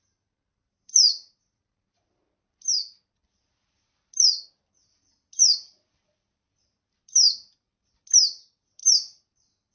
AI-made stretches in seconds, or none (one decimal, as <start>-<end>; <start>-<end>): 0.5-2.2; 8.8-9.7